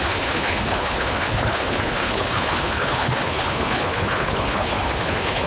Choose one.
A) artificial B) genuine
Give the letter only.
A